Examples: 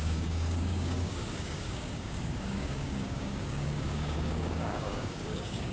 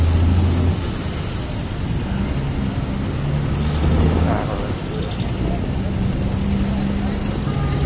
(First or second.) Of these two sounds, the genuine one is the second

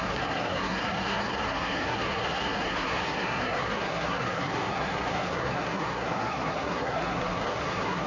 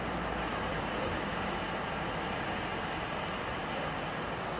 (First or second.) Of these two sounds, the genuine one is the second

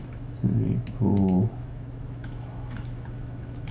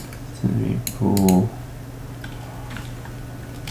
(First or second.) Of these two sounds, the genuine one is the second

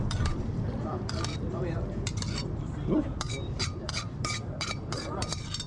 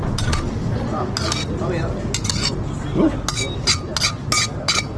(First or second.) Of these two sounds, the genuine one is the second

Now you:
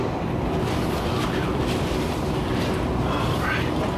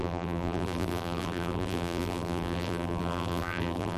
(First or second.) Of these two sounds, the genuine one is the first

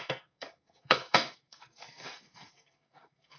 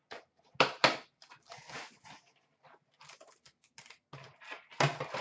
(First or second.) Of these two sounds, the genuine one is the second